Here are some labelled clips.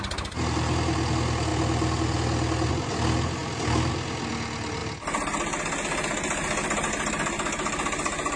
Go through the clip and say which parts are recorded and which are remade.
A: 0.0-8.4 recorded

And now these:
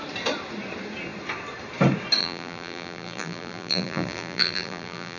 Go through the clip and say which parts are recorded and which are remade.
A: 0.0-2.2 recorded; 2.2-5.2 remade

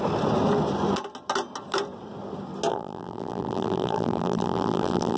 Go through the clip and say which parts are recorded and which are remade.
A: 0.0-2.7 recorded; 2.7-5.2 remade

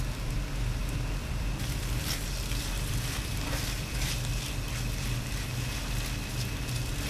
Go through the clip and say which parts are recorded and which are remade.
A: 0.0-0.8 recorded; 0.8-4.3 remade; 4.3-7.1 recorded

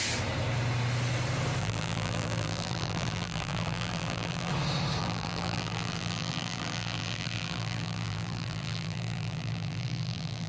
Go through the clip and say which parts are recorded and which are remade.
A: 0.0-1.6 recorded; 1.6-4.5 remade; 4.5-5.0 recorded; 5.0-10.5 remade

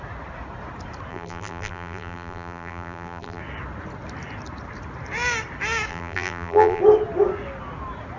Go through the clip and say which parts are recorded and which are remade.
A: 0.0-1.1 recorded; 1.1-3.4 remade; 3.4-5.9 recorded; 5.9-6.8 remade; 6.8-8.2 recorded

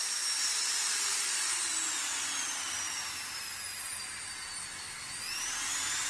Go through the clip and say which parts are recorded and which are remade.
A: 0.0-0.7 recorded; 0.7-6.1 remade